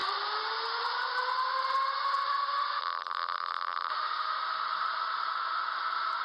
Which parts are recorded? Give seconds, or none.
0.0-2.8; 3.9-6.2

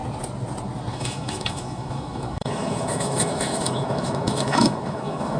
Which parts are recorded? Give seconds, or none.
0.0-0.9

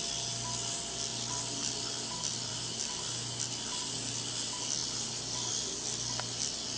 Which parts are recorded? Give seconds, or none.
0.0-6.8

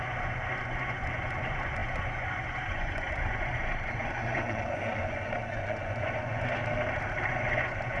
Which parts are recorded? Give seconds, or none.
6.6-7.3

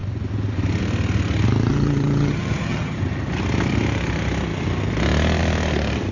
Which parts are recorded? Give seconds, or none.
0.0-1.7; 3.0-6.1

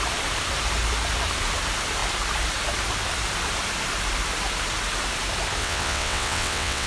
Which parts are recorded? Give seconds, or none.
0.0-5.6

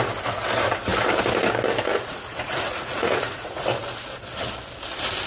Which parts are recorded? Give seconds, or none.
0.0-1.9; 3.6-5.3